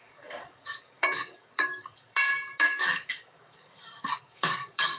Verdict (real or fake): fake